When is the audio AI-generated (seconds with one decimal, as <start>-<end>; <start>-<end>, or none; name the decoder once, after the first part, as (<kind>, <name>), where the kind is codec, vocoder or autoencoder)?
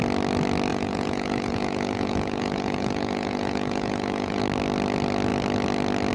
0.7-4.4 (vocoder, Vocos)